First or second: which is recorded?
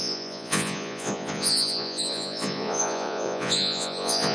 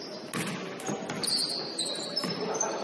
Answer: second